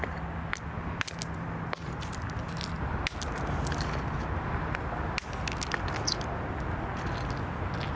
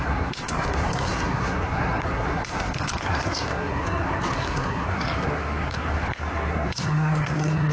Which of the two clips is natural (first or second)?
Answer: first